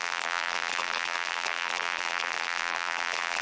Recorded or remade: remade